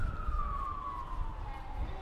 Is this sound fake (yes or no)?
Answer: no